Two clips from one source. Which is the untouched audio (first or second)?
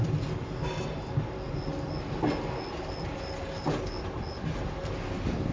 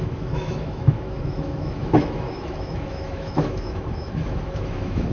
first